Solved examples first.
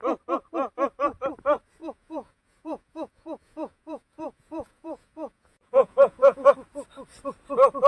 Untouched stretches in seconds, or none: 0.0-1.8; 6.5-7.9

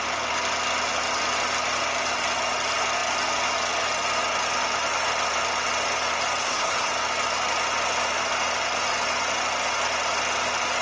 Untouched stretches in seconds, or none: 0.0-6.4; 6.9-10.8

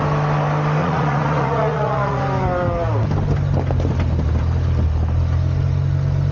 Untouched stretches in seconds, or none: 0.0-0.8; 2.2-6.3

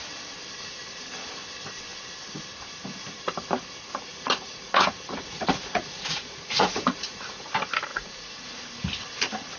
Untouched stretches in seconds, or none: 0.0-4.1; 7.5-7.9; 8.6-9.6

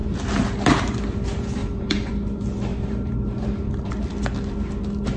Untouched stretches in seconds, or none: 0.0-1.6; 2.1-2.7; 3.9-5.2

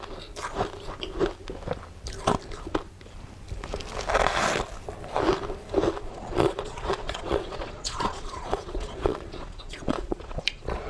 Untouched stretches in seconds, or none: 0.0-6.1